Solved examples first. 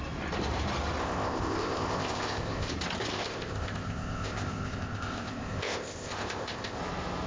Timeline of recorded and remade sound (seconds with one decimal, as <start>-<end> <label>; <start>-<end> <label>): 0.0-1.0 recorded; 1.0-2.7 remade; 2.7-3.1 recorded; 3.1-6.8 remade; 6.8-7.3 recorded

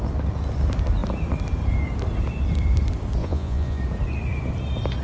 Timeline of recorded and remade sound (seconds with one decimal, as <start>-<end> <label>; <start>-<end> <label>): 0.0-3.2 recorded; 3.2-3.8 remade; 3.8-5.0 recorded

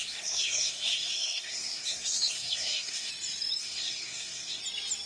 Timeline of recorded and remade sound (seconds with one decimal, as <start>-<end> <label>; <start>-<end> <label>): 0.0-3.1 remade; 3.1-3.6 recorded; 3.6-4.6 remade; 4.6-5.1 recorded

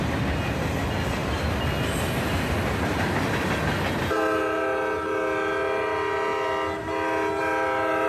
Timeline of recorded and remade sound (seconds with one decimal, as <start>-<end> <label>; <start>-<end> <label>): 0.0-8.1 recorded

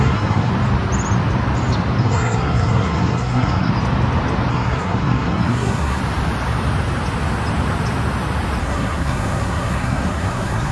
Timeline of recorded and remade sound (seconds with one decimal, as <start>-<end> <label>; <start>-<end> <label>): 0.0-0.5 remade; 0.5-2.0 recorded; 2.0-3.7 remade; 3.7-4.5 recorded; 4.5-6.0 remade; 6.0-8.6 recorded; 8.6-10.7 remade